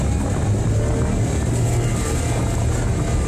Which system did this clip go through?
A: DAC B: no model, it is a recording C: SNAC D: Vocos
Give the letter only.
B